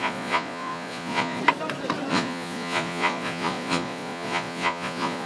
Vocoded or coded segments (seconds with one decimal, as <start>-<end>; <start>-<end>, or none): 0.0-1.4; 2.1-5.3